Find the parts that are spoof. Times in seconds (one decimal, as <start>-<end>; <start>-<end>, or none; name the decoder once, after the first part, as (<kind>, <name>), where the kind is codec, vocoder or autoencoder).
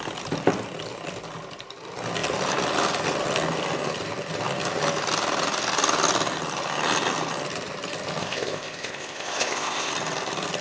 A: 8.2-9.9 (codec, ZipCodec)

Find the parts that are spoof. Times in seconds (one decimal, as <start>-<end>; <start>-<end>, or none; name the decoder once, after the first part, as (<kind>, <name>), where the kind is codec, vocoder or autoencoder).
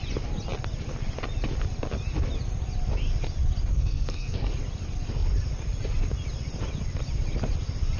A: 3.7-4.5 (codec, SNAC)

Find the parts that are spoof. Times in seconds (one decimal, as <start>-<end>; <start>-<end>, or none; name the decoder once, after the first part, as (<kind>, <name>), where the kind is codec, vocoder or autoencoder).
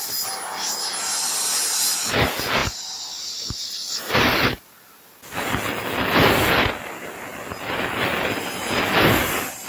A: none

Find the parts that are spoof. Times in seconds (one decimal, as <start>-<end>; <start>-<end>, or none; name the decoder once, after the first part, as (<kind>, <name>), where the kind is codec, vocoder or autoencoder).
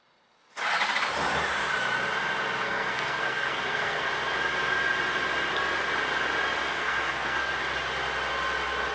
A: 2.6-4.1 (codec, SNAC); 6.7-7.5